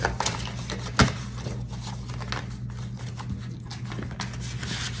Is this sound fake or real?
real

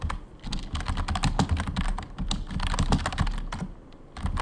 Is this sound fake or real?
real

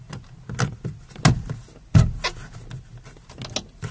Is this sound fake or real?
real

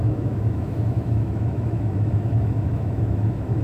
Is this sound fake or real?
fake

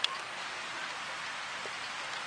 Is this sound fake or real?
real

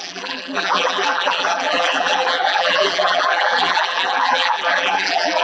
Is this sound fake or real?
fake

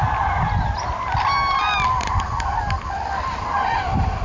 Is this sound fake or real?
real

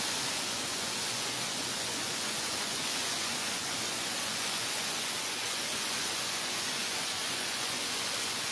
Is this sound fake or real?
fake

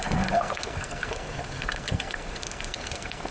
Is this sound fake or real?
fake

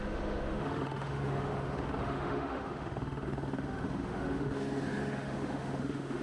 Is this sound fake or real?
fake